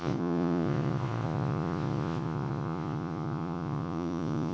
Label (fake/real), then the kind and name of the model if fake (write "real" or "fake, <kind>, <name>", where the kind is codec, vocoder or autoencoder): fake, vocoder, Vocos